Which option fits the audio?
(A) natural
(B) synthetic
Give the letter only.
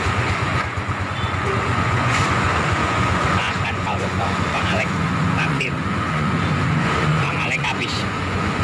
B